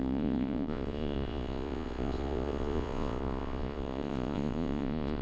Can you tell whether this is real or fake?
fake